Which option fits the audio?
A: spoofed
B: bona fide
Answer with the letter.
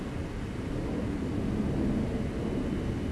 B